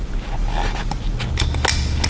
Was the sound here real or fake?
real